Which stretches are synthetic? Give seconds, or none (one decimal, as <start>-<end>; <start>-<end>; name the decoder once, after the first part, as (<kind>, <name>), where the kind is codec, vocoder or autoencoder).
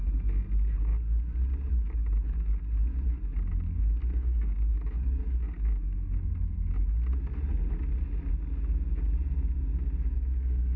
none